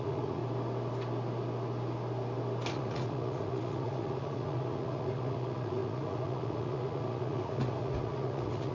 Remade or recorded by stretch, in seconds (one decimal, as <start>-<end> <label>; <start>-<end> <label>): 0.0-0.4 remade; 0.4-2.7 recorded; 2.7-8.7 remade